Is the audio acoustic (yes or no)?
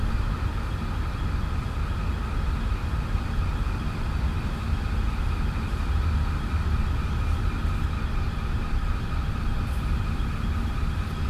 yes